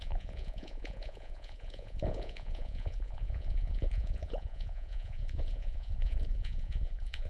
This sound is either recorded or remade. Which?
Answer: remade